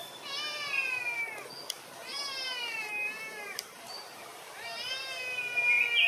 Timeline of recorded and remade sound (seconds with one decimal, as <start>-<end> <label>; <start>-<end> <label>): 0.0-2.0 recorded; 2.0-4.9 remade; 4.9-6.1 recorded